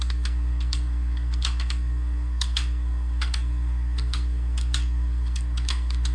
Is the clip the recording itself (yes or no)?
no